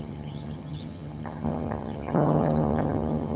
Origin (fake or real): fake